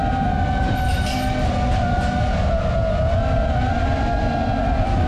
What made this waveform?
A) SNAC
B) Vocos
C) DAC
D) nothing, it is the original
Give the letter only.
D